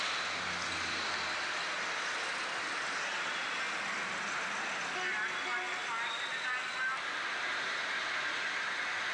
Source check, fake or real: real